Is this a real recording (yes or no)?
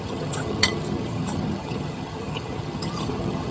no